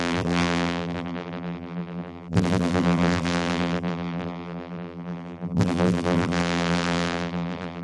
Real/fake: fake